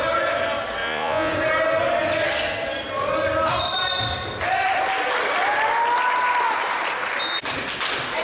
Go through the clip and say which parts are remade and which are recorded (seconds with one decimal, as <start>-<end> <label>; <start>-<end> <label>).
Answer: 0.0-0.8 recorded; 0.8-1.3 remade; 1.3-8.2 recorded